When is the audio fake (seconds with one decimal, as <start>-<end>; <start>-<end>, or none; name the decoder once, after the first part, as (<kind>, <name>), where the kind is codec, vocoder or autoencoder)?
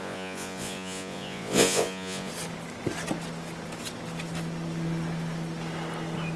0.0-2.3 (vocoder, Vocos)